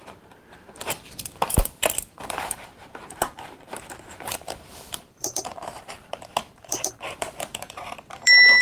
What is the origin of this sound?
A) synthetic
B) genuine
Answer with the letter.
A